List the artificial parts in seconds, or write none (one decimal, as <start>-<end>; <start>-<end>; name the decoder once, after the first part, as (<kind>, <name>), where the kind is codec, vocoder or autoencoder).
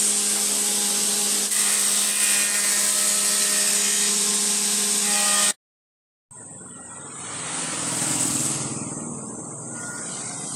1.1-2.1 (vocoder, BigVGAN v2)